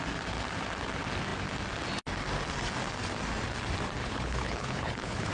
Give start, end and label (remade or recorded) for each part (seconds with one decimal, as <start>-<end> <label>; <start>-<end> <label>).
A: 0.0-4.0 recorded; 4.0-5.3 remade